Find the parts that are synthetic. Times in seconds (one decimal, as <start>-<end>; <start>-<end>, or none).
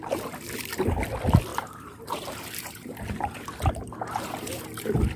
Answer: 1.5-4.6